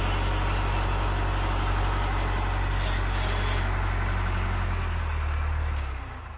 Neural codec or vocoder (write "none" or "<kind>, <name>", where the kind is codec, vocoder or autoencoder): none